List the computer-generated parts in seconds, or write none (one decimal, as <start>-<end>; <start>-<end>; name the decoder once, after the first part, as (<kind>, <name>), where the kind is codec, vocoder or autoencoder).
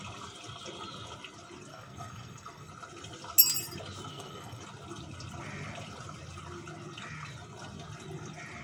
1.7-2.7 (codec, SNAC); 4.1-4.6